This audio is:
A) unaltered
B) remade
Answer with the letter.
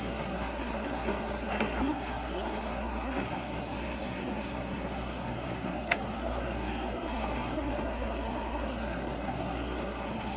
B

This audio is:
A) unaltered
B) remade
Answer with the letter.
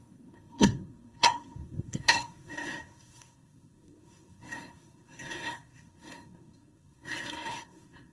B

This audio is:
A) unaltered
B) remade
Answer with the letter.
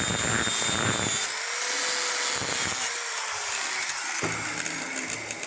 A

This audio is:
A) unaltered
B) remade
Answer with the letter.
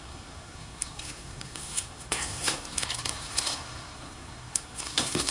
B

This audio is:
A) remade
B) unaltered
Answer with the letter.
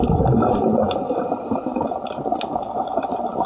B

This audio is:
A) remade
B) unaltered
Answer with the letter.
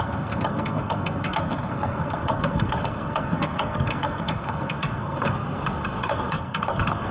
A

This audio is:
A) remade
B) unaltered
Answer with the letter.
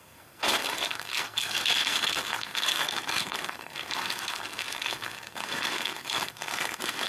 A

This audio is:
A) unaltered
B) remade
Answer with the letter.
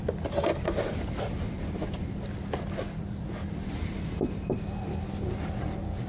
A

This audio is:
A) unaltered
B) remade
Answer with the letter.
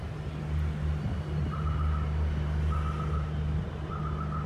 A